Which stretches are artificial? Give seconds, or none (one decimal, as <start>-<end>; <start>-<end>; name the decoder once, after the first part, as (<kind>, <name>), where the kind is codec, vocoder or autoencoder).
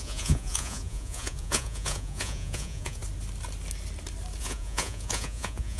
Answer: 0.0-3.0 (vocoder, Vocos); 4.4-5.8